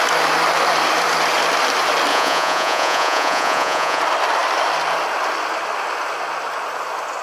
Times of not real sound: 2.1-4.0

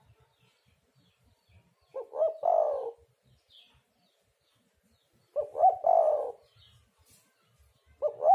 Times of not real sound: none

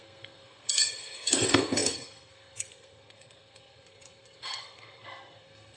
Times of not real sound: 0.0-5.8